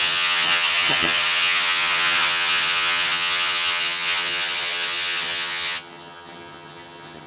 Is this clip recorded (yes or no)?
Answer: no